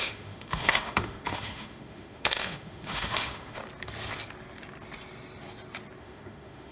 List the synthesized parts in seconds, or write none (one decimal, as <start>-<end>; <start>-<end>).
0.0-3.6; 6.0-6.7